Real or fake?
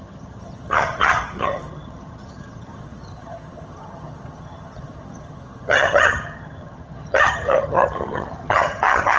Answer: fake